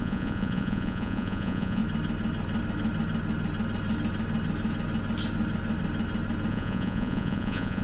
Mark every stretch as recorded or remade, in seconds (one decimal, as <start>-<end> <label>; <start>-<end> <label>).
0.0-1.8 remade; 1.8-6.5 recorded; 6.5-7.8 remade